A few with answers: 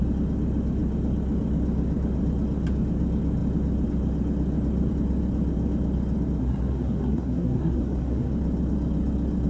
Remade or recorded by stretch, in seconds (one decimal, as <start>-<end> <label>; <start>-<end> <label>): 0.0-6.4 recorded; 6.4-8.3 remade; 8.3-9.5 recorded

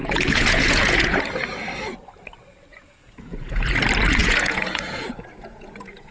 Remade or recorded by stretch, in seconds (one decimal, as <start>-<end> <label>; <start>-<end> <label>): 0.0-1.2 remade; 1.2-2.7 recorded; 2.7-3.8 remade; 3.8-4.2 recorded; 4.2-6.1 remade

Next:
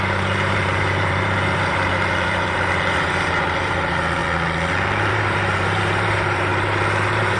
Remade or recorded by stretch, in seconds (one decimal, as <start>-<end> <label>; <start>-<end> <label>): 0.0-4.2 remade; 4.2-5.1 recorded; 5.1-7.4 remade